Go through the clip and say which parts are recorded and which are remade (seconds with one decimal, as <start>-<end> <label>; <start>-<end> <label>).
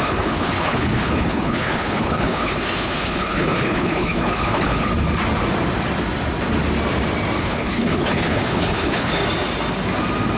0.0-4.9 remade; 4.9-7.4 recorded; 7.4-9.2 remade; 9.2-10.4 recorded